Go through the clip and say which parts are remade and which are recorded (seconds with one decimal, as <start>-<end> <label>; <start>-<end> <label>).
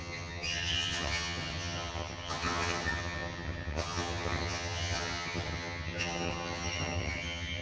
0.0-7.6 remade